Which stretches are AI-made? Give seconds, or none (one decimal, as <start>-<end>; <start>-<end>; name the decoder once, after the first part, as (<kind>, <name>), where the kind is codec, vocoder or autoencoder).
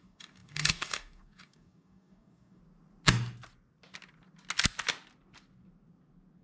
0.0-2.6 (codec, DAC)